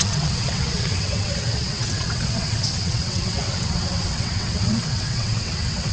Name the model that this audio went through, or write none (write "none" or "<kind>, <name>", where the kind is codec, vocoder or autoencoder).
vocoder, WaveNeXt